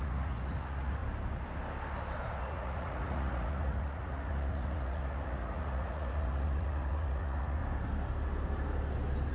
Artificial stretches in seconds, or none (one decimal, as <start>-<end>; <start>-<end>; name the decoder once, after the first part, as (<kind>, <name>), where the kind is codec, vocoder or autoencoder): 0.0-1.0 (vocoder, Vocos); 2.4-7.6